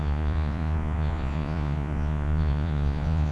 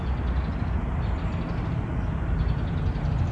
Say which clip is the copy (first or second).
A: first